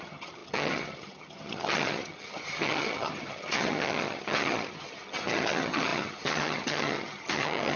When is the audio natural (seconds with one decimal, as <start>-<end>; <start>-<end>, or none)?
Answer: none